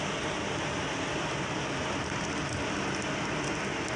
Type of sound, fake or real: real